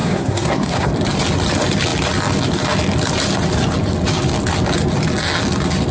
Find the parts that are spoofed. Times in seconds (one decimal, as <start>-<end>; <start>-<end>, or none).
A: 0.0-0.9